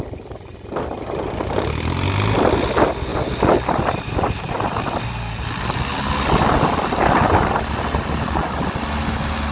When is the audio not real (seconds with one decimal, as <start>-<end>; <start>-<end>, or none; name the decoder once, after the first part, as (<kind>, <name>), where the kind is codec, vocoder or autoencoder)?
none